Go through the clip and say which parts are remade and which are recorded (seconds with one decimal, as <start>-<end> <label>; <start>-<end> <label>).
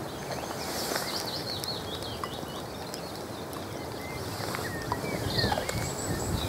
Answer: 0.0-6.5 recorded